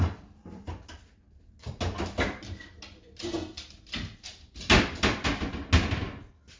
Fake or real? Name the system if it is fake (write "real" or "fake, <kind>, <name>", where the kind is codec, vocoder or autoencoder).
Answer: real